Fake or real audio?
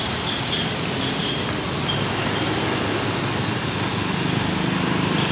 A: real